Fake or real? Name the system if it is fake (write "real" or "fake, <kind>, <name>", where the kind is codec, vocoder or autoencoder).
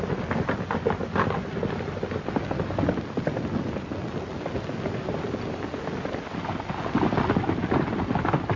real